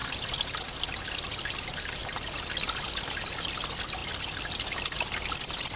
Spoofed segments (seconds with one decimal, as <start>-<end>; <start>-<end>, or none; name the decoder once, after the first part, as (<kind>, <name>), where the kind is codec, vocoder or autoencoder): 2.0-2.7 (vocoder, BigVGAN v2); 4.0-4.8